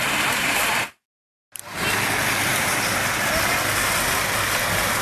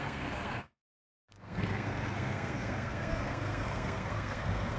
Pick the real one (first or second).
first